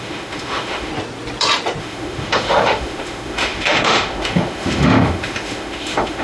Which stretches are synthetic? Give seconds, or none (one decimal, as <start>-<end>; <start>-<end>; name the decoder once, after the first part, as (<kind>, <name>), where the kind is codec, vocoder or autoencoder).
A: 0.0-0.9 (autoencoder, DAC-VAE); 1.8-6.2